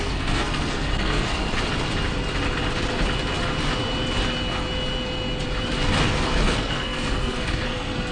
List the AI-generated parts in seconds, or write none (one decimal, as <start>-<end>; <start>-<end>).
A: 0.0-1.4; 6.0-8.1